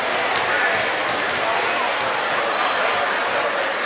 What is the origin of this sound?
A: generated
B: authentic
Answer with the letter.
B